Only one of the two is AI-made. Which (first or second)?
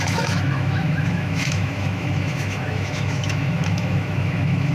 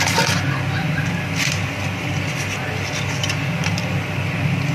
first